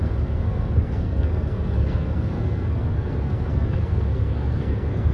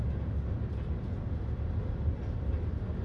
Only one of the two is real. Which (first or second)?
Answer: second